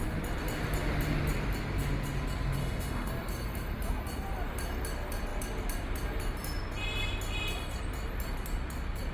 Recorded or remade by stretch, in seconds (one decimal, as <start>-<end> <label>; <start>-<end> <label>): 0.0-2.6 recorded; 2.6-3.1 remade; 3.1-9.1 recorded